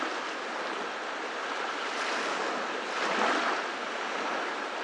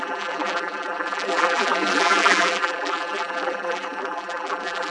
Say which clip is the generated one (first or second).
second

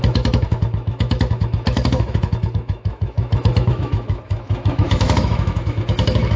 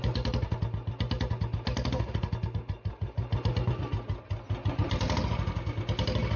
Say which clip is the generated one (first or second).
first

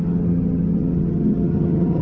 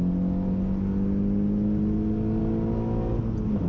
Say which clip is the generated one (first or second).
first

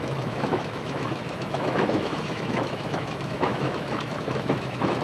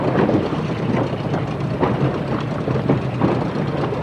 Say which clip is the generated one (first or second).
first